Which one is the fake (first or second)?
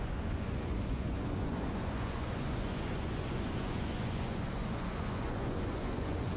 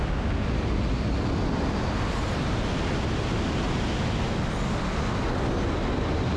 first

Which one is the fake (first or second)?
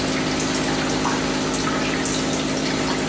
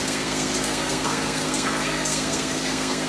second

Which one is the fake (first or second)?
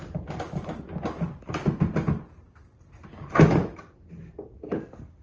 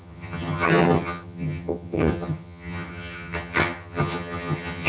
second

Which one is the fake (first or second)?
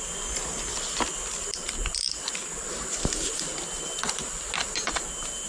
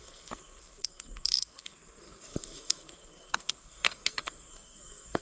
second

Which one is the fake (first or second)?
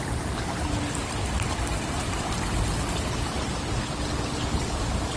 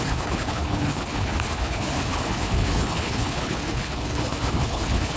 second